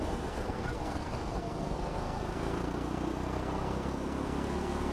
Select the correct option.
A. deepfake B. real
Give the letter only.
A